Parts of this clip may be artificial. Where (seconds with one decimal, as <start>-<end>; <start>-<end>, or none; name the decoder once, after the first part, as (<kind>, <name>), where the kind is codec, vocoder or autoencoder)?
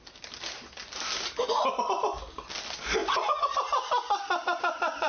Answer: none